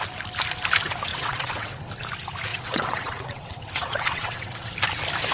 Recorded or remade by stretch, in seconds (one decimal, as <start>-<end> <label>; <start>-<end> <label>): 0.0-1.1 recorded; 1.1-1.8 remade; 1.8-2.5 recorded; 2.5-4.7 remade; 4.7-5.3 recorded